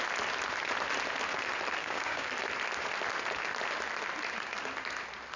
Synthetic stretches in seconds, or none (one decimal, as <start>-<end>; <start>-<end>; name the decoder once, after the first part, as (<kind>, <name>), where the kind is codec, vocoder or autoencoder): 1.8-2.3 (codec, DAC)